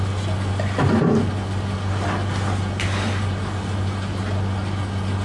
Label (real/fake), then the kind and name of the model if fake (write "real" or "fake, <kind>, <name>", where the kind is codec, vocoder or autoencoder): real